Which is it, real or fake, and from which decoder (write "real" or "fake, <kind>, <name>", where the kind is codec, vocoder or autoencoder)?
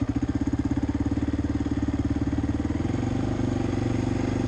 real